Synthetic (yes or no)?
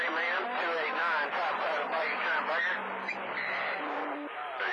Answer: yes